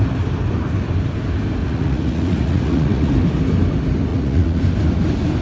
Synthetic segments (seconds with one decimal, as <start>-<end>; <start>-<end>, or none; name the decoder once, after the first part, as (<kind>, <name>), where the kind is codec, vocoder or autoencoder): 1.6-3.1 (vocoder, Vocos); 4.1-4.6